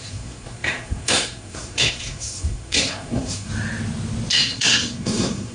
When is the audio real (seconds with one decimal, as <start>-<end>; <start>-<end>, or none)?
3.5-4.3